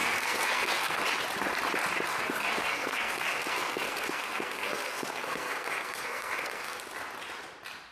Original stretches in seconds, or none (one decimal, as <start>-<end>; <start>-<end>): 1.0-2.1; 6.8-7.9